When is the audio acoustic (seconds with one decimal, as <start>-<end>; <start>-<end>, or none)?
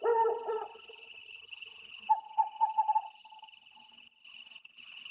3.2-4.4